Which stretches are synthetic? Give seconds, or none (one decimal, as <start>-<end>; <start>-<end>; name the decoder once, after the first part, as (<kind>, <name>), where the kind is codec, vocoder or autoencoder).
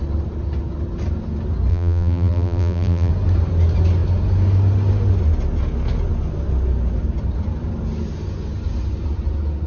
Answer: 1.7-3.1 (vocoder, BigVGAN v2)